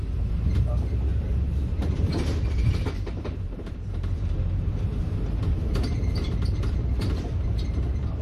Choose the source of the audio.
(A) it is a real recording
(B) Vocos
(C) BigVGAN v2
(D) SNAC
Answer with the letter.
C